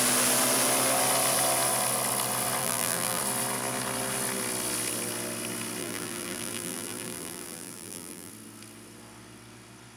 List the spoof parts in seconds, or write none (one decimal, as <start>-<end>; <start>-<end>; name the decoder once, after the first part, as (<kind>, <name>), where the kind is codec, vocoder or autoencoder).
2.6-3.2 (vocoder, BigVGAN v2); 5.8-8.3